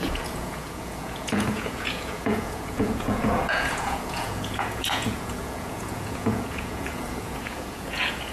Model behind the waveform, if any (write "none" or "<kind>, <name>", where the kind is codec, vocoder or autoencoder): vocoder, Vocos